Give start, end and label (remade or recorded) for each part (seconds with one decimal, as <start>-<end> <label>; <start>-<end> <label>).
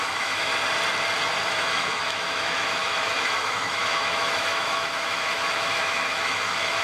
0.0-0.5 remade; 0.5-1.4 recorded; 1.4-6.8 remade